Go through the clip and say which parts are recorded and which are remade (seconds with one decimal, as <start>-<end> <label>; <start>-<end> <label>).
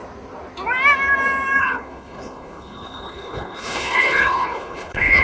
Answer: 0.0-1.6 recorded; 1.6-5.2 remade